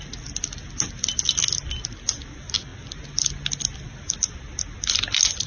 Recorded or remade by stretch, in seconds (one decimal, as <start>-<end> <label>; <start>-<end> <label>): 0.0-5.5 recorded